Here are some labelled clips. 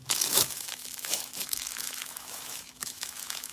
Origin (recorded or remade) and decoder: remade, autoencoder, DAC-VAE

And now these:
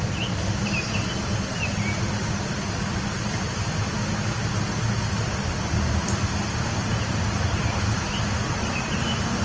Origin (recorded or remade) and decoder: recorded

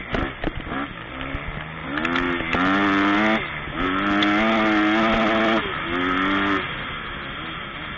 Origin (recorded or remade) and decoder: recorded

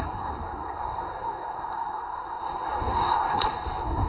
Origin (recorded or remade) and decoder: remade, codec, SNAC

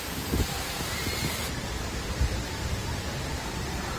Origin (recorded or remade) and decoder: remade, vocoder, BigVGAN v2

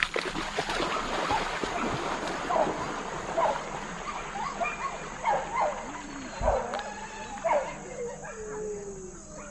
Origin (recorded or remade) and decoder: recorded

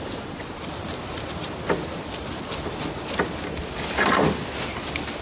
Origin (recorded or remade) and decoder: recorded